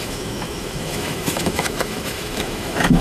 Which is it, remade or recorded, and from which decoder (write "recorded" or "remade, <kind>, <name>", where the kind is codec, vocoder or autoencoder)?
remade, autoencoder, DAC-VAE